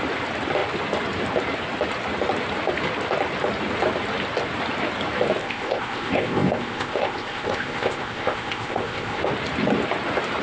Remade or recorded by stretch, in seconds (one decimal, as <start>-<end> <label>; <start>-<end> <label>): 0.0-5.4 recorded; 5.4-9.2 remade; 9.2-10.4 recorded